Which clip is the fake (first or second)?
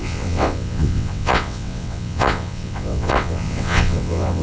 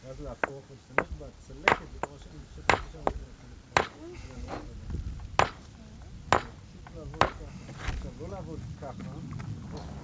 first